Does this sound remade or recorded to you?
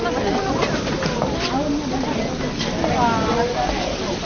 recorded